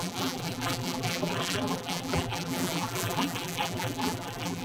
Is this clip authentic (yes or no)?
no